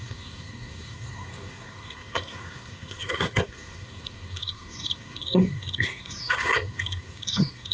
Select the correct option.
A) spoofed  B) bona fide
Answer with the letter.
A